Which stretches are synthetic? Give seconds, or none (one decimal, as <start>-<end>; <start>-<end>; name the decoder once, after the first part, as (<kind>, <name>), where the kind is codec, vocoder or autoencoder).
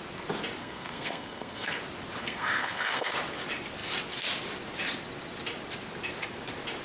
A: 0.6-1.8 (codec, SNAC); 2.2-3.1